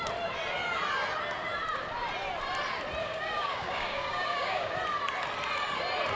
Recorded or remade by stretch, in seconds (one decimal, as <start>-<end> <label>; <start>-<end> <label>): 0.0-3.0 recorded; 3.0-4.7 remade; 4.7-6.2 recorded